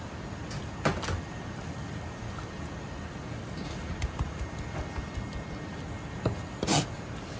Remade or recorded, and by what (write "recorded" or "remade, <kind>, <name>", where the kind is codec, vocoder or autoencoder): recorded